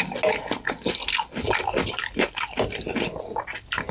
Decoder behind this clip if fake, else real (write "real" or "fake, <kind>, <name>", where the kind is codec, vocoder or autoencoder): real